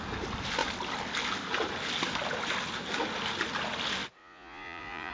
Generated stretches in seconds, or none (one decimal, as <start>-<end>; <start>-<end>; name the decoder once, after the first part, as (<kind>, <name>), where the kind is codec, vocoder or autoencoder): 4.2-5.1 (vocoder, Vocos)